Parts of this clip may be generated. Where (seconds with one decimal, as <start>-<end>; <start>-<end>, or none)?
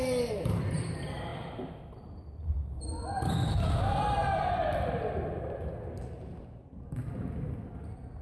0.0-1.3; 1.8-8.2